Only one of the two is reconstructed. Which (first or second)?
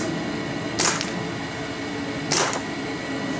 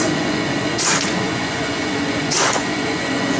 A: second